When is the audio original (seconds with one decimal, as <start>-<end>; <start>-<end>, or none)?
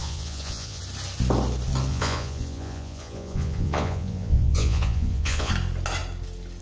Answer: 0.8-1.9; 5.5-6.6